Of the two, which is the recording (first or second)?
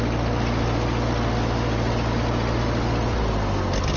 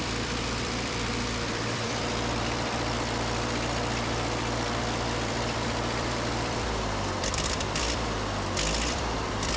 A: first